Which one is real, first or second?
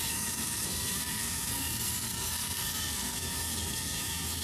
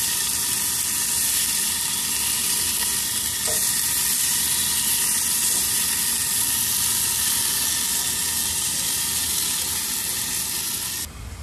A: second